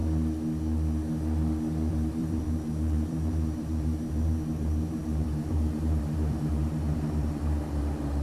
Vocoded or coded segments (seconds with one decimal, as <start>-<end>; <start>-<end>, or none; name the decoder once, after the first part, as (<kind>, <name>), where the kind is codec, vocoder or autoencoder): 1.9-8.2 (vocoder, BigVGAN v2)